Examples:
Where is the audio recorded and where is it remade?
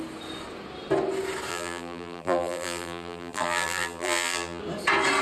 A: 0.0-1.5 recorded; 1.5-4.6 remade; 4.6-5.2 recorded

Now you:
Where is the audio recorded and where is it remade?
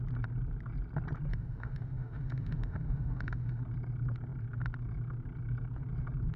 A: 0.0-1.3 recorded; 1.3-3.6 remade; 3.6-6.4 recorded